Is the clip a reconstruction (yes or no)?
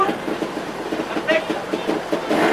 no